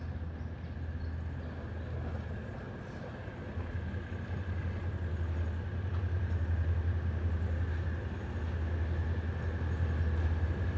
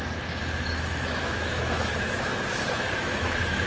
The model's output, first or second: second